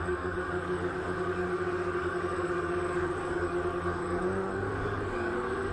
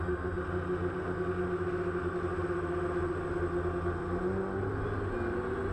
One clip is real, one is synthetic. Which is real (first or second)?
second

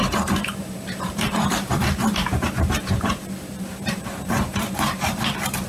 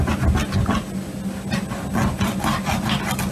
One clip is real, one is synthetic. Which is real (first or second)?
second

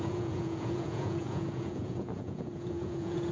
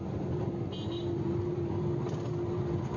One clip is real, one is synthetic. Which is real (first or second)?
second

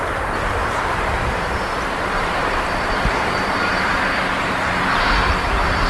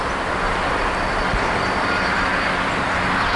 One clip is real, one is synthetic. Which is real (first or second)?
second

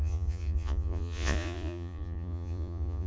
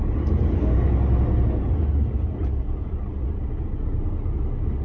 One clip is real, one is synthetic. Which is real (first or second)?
second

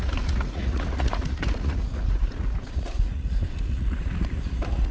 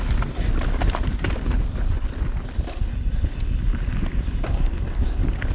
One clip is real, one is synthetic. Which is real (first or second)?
second